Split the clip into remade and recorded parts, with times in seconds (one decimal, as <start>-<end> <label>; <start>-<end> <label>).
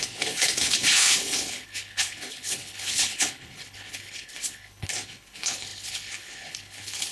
0.0-7.1 remade